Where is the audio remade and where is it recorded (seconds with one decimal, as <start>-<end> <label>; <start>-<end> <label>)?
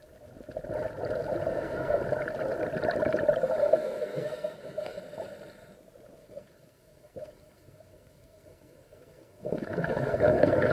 0.0-1.5 recorded; 1.5-2.0 remade; 2.0-3.6 recorded; 3.6-5.0 remade; 5.0-6.2 recorded; 6.2-10.7 remade